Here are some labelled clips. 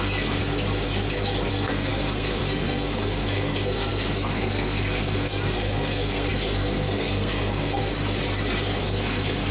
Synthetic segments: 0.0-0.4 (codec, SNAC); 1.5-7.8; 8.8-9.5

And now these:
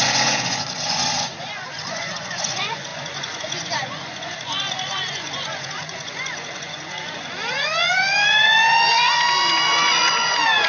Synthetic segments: 0.0-10.7 (vocoder, Vocos)

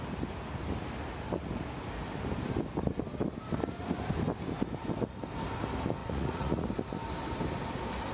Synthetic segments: 6.0-6.7 (vocoder, Vocos)

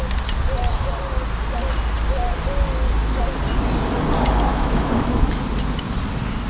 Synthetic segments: 4.5-5.4 (autoencoder, DAC-VAE)

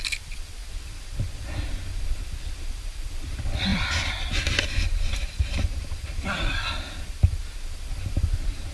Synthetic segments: 0.0-8.7 (vocoder, BigVGAN v2)